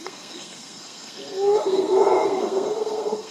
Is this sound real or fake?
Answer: fake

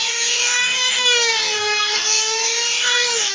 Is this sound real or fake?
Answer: fake